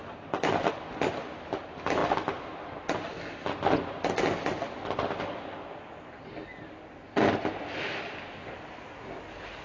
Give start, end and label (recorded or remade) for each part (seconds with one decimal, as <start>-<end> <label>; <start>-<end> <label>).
0.0-9.6 recorded